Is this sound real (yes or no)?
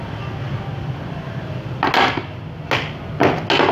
yes